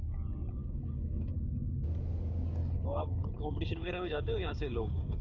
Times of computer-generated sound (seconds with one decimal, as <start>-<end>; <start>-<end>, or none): 0.6-1.3; 2.6-5.2